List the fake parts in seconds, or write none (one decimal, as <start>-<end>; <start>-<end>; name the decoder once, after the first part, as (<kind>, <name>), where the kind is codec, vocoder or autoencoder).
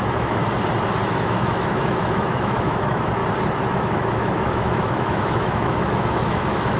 0.0-0.4 (autoencoder, DAC-VAE); 1.2-3.2; 3.7-6.8